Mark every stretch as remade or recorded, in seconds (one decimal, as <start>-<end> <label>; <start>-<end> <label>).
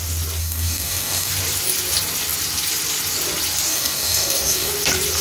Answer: 0.0-0.4 recorded; 0.4-1.3 remade; 1.3-3.7 recorded; 3.7-4.7 remade; 4.7-5.2 recorded